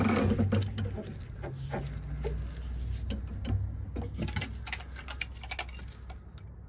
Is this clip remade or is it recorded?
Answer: recorded